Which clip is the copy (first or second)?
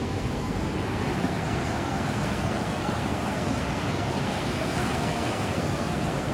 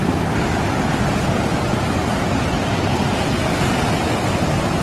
first